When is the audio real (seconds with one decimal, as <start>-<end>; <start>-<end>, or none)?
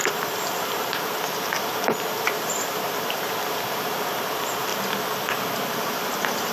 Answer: 4.7-5.7